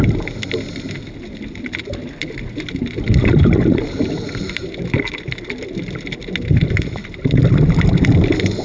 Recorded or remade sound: recorded